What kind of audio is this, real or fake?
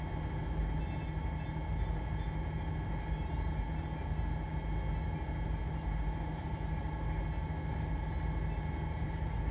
real